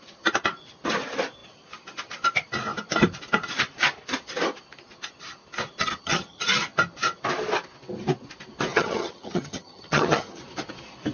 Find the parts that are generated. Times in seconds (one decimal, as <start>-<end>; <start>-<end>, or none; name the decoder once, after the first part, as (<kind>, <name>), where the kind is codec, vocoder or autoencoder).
5.8-6.4 (vocoder, HiFi-GAN); 8.7-10.4